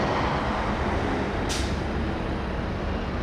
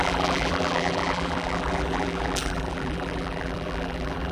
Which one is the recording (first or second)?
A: first